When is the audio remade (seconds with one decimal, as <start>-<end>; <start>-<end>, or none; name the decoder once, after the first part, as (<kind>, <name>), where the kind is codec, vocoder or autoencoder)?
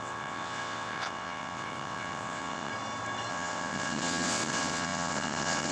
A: 0.0-2.7 (vocoder, WaveNeXt); 3.3-5.7